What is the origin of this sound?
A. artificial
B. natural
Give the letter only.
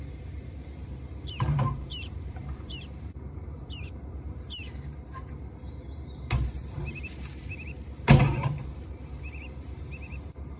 A